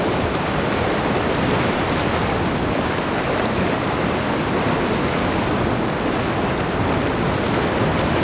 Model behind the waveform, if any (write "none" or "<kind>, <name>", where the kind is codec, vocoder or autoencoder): none